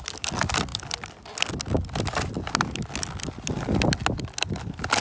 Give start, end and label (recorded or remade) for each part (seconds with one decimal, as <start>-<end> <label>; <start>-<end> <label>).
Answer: 0.0-5.0 recorded